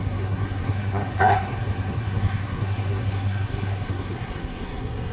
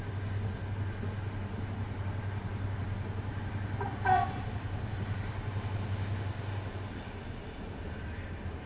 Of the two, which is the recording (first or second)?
second